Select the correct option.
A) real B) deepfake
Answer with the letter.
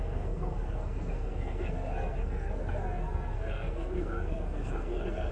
B